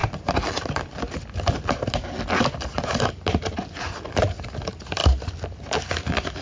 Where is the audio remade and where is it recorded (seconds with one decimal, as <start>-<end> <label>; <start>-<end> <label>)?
0.0-6.4 recorded